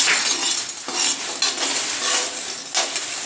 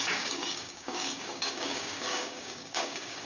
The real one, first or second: first